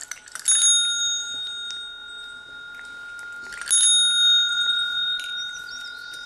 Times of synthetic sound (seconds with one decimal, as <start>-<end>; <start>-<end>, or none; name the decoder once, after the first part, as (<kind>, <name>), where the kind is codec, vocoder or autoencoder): 4.5-5.2 (vocoder, BigVGAN v2)